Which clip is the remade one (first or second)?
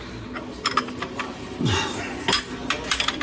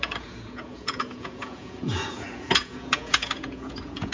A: second